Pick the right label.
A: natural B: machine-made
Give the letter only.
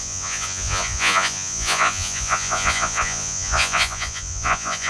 B